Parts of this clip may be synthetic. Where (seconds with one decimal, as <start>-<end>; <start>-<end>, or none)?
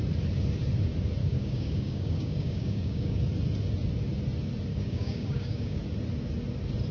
1.2-3.2; 4.7-5.8